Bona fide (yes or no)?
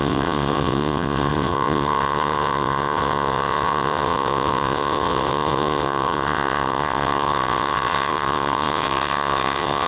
no